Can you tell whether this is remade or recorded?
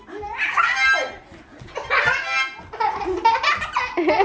recorded